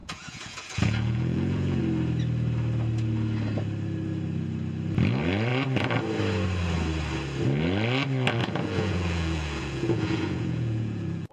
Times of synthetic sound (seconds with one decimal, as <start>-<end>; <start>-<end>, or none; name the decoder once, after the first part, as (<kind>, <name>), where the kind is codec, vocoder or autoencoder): 0.0-1.8 (vocoder, Vocos); 8.4-11.3